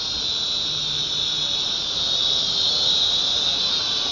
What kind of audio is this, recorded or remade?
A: recorded